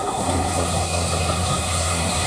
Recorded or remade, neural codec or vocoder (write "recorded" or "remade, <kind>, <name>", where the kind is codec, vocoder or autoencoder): remade, codec, SNAC